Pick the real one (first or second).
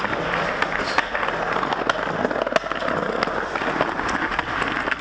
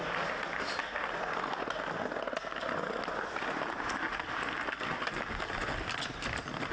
first